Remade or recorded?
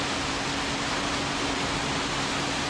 recorded